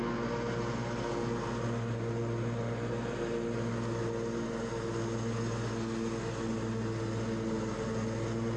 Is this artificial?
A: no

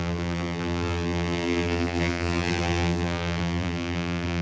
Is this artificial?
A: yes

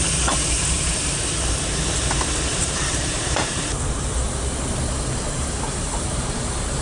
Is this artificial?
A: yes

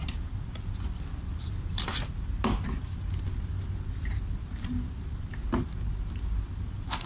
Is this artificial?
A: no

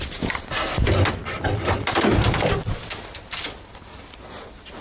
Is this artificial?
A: yes